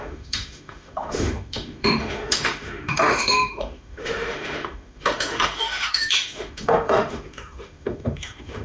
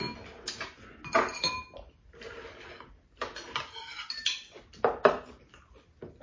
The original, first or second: second